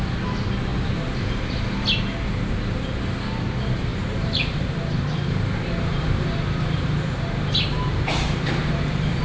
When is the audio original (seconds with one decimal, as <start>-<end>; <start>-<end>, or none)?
0.0-0.7; 1.6-3.9